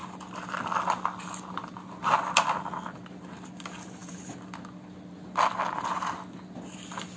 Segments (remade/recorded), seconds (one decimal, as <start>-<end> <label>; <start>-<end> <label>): 0.0-7.2 recorded